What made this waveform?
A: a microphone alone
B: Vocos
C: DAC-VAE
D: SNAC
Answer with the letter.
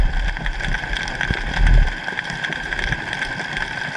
A